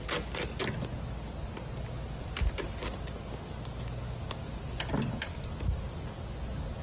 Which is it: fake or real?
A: real